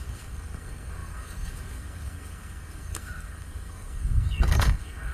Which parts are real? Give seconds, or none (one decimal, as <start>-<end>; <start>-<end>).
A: none